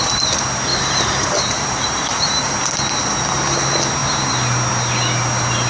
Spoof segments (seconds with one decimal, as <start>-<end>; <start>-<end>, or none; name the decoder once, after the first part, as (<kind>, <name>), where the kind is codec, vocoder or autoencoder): 0.7-2.5 (vocoder, BigVGAN v2)